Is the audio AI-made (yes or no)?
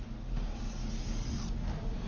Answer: no